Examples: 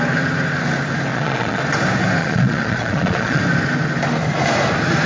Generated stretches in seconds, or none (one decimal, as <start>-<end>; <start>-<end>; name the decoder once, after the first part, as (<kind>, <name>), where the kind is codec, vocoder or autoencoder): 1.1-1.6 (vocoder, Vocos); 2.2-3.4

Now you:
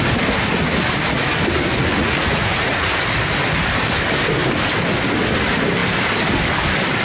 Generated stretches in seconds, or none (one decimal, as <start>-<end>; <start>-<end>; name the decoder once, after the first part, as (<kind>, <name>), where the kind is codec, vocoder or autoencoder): 2.0-2.9 (vocoder, Vocos)

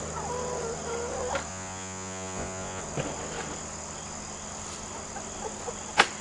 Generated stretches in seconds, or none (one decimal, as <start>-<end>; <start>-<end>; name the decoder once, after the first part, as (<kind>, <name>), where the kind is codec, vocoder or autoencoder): 1.5-2.8 (vocoder, Vocos)